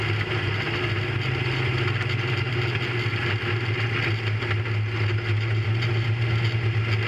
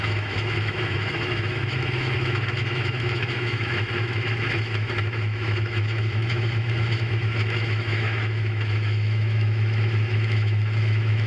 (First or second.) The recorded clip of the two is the first